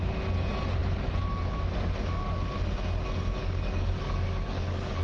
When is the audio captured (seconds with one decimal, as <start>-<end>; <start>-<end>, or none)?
0.0-3.4